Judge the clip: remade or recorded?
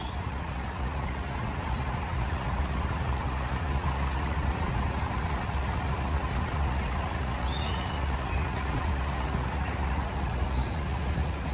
remade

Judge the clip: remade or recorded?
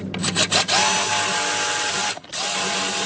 recorded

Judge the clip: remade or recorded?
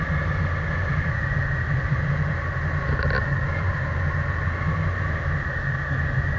recorded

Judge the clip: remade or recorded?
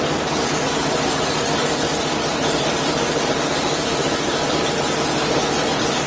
recorded